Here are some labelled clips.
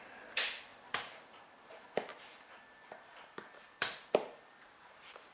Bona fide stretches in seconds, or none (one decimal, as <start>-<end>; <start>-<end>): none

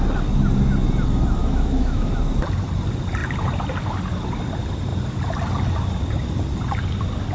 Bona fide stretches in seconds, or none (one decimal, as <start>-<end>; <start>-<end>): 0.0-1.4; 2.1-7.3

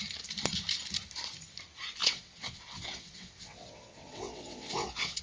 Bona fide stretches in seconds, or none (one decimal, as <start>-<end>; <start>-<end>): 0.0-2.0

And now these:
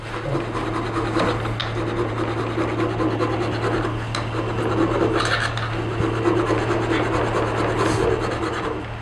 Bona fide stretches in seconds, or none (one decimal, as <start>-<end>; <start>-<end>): 0.0-9.0

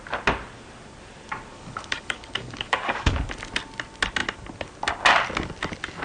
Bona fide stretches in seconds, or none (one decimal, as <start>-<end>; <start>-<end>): 0.0-1.5; 3.2-6.0

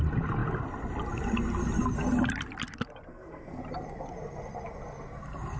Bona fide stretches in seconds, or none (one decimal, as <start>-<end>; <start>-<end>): 0.0-3.1; 3.6-5.6

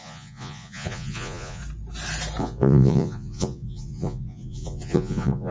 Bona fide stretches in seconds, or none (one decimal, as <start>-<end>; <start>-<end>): 1.6-2.4